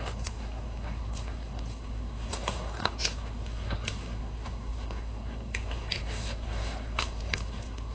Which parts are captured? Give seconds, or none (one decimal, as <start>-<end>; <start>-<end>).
none